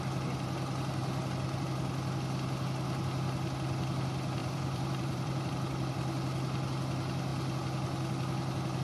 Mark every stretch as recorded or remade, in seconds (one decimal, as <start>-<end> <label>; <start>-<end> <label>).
0.0-4.4 recorded; 4.4-5.5 remade; 5.5-8.8 recorded